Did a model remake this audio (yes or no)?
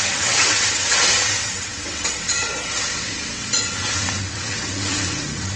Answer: yes